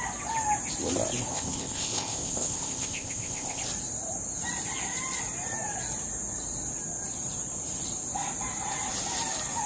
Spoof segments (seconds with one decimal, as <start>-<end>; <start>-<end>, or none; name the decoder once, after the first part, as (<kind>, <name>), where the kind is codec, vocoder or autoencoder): 1.3-3.6 (codec, ZipCodec)